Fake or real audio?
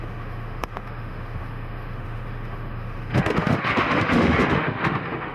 fake